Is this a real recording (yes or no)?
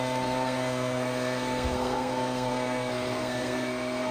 no